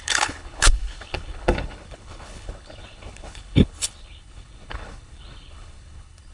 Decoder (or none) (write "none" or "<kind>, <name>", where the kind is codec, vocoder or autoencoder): codec, HILCodec